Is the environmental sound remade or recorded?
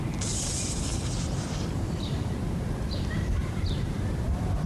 remade